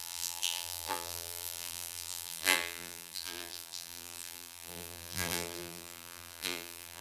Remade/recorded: remade